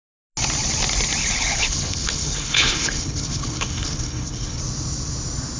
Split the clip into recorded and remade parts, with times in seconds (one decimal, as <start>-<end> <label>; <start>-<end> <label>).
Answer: 0.0-1.2 recorded; 1.2-4.6 remade; 4.6-5.6 recorded